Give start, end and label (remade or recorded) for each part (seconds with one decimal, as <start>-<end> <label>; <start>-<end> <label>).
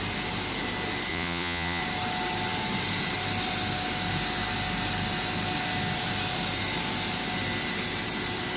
0.0-1.1 recorded; 1.1-1.8 remade; 1.8-8.6 recorded